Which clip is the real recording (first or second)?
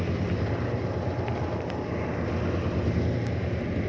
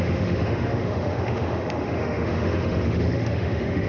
first